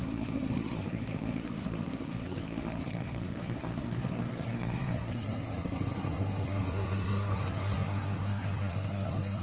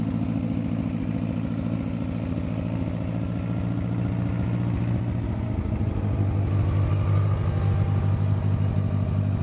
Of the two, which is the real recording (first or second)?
second